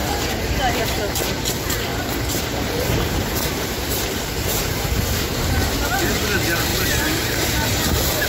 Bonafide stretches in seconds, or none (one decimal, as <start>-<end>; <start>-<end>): 0.8-1.9; 5.6-6.7; 7.8-8.3